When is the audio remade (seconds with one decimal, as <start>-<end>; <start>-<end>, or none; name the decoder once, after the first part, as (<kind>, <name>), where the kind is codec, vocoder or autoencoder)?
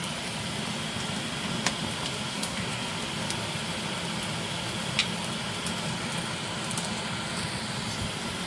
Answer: 2.3-2.9 (codec, SNAC)